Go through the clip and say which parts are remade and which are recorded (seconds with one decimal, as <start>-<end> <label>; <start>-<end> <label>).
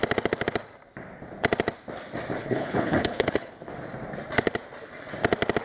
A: 0.0-2.4 recorded; 2.4-3.7 remade; 3.7-5.6 recorded